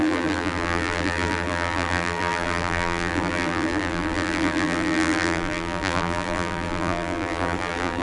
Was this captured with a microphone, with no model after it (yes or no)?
no